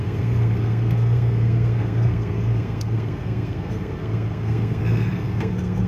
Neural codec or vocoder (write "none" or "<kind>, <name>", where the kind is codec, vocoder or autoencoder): codec, SNAC